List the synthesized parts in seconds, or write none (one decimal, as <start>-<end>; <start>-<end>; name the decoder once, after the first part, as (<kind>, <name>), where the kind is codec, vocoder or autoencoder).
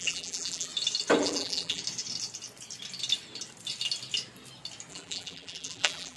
0.0-0.7 (vocoder, BigVGAN v2); 1.2-1.8; 4.9-6.2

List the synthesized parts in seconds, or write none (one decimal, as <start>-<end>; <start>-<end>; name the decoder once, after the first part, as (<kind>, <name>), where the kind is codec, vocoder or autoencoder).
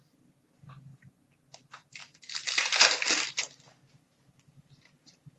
none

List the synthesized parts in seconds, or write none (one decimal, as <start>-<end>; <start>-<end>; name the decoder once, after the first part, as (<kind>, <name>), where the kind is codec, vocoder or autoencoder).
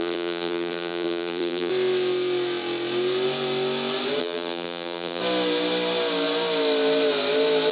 0.0-1.7 (vocoder, BigVGAN v2); 4.2-5.2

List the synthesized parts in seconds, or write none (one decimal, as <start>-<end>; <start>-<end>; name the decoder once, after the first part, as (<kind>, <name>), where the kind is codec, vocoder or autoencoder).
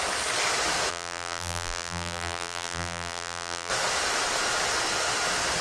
0.9-3.7 (vocoder, BigVGAN v2)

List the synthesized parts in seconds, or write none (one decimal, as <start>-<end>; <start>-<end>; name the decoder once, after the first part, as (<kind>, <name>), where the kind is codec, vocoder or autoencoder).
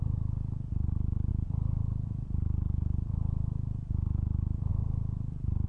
none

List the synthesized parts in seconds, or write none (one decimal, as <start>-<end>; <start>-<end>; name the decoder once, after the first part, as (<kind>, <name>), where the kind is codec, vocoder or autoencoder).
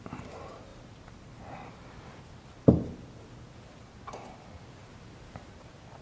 0.7-2.2 (vocoder, BigVGAN v2); 4.8-5.5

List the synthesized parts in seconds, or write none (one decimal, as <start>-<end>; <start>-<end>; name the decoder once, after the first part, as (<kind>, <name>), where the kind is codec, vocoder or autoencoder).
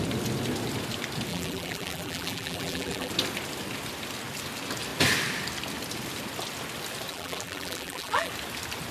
1.3-3.1 (vocoder, BigVGAN v2); 7.1-8.3